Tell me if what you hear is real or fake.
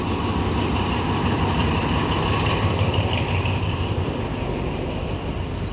fake